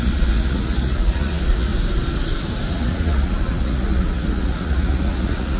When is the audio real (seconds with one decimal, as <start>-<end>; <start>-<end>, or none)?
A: 1.7-2.7